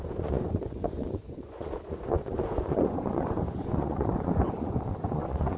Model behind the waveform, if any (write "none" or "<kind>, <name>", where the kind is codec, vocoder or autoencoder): vocoder, Vocos